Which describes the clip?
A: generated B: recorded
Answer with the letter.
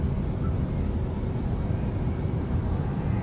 B